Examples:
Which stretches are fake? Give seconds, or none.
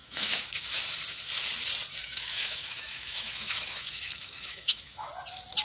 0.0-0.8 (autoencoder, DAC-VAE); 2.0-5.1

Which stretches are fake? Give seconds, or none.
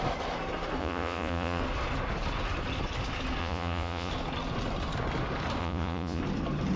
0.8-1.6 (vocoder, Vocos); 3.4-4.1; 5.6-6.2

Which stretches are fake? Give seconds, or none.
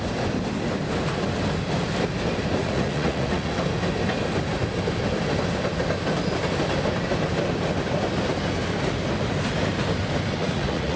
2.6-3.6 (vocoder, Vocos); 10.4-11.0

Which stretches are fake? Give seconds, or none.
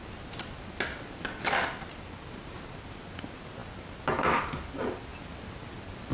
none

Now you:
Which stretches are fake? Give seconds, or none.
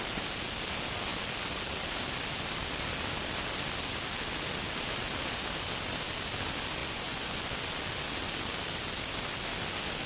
6.8-7.5 (vocoder, Vocos)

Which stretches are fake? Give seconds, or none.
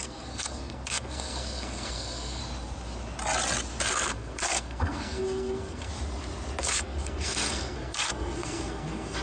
0.0-2.4 (codec, SNAC); 3.9-5.9; 6.6-9.2